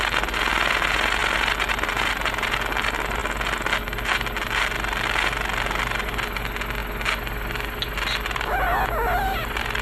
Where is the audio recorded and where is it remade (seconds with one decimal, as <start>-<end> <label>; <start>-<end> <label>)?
0.0-9.8 recorded